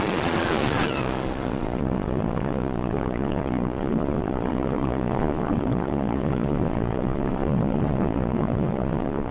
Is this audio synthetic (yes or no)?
yes